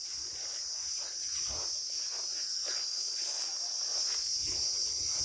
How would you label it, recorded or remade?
recorded